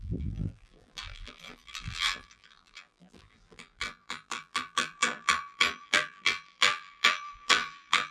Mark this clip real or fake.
fake